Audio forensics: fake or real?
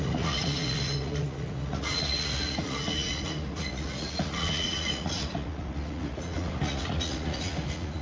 fake